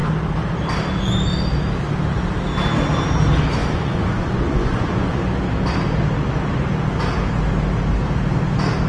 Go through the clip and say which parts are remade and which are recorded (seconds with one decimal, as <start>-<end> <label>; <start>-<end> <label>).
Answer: 0.0-3.6 recorded; 3.6-5.2 remade; 5.2-8.9 recorded